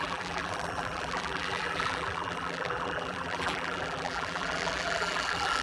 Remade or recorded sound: remade